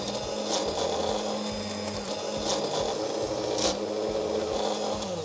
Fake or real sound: real